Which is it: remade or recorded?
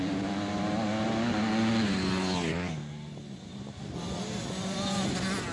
recorded